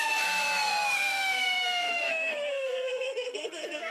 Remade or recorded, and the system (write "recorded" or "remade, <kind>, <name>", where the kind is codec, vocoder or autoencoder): remade, codec, SNAC